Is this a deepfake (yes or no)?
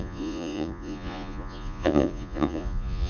yes